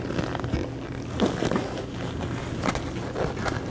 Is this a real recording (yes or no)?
yes